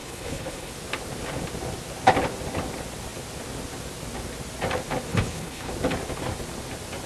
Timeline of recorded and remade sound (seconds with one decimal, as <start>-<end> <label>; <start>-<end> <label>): 0.0-0.7 remade; 0.7-5.1 recorded; 5.1-5.7 remade; 5.7-7.1 recorded